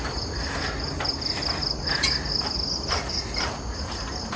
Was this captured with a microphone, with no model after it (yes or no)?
yes